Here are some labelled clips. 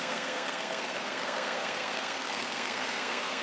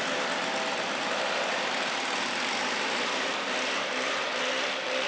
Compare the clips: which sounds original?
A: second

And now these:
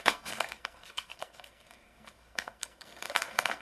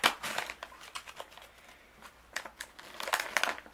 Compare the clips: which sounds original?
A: second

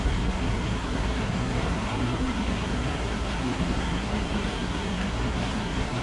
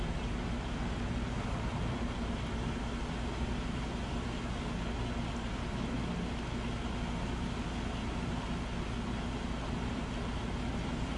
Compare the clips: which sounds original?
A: second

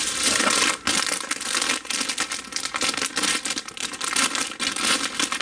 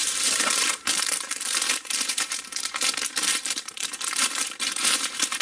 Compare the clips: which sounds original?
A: first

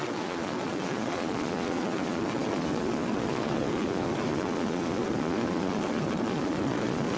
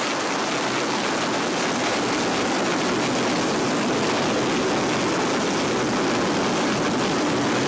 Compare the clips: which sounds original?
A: second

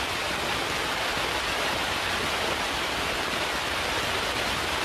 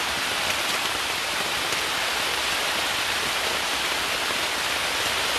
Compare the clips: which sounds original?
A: first